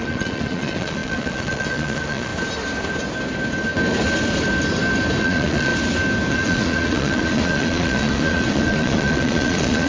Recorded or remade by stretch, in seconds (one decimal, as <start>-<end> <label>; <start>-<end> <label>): 0.0-2.3 remade; 2.3-5.2 recorded; 5.2-5.7 remade; 5.7-6.3 recorded; 6.3-9.9 remade